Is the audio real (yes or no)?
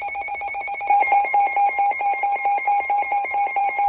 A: no